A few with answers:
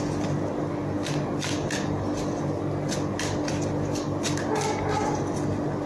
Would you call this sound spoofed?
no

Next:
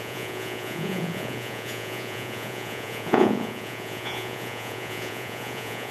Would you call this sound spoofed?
yes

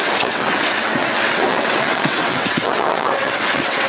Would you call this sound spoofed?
yes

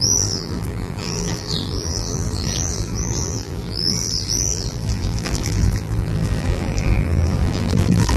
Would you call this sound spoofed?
yes